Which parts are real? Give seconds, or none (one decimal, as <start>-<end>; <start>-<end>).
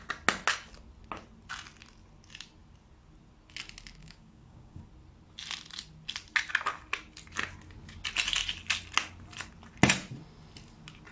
0.0-4.0; 4.8-11.1